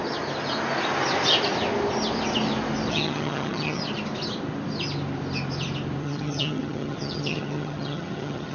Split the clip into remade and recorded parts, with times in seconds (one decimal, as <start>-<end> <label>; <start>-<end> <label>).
0.0-2.9 recorded; 2.9-3.8 remade; 3.8-6.0 recorded; 6.0-8.5 remade